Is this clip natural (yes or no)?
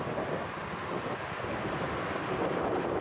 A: yes